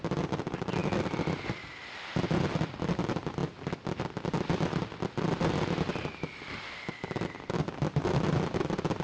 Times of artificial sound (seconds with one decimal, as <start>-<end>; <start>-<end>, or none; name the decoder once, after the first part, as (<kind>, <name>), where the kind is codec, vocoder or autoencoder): none